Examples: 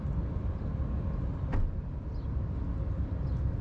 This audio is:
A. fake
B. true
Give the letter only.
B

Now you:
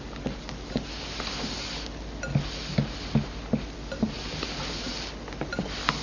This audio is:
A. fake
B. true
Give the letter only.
B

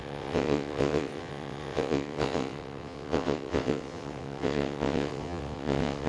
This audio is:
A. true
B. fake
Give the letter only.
B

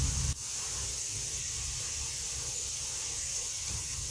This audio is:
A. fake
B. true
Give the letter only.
B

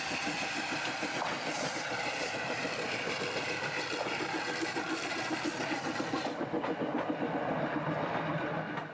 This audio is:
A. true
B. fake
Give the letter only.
A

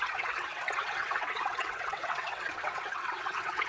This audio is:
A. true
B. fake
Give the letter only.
B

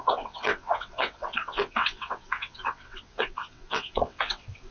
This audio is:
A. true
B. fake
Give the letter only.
B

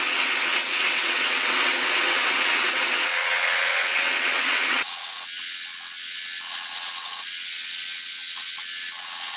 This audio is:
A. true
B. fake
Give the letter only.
B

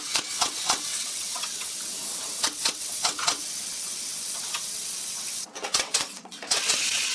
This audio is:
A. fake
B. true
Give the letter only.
A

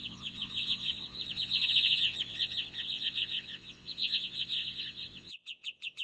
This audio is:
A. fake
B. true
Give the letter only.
A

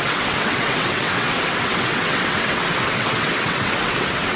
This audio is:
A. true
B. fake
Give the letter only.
B